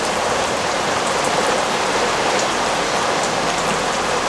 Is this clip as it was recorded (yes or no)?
no